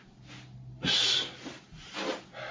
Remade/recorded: recorded